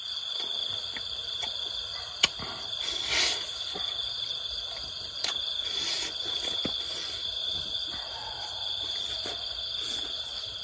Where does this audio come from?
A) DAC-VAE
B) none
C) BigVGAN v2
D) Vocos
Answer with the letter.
B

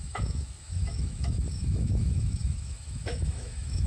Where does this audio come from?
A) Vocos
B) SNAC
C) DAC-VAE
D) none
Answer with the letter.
C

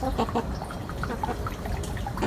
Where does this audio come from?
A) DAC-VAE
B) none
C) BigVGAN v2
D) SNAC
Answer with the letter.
B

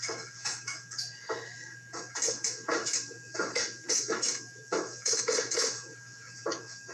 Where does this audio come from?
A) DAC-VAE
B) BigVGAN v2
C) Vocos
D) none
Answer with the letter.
A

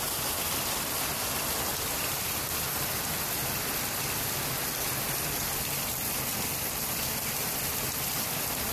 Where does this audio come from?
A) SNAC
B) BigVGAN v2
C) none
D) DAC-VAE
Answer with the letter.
C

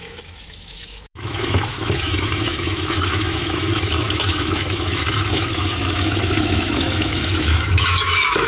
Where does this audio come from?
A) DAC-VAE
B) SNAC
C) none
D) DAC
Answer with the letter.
A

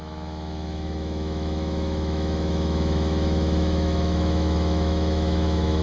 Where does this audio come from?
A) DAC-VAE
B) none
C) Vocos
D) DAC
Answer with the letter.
A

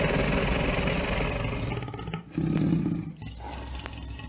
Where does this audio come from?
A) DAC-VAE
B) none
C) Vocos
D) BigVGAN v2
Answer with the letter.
B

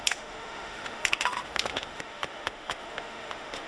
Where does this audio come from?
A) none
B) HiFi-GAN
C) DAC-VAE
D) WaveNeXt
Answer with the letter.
C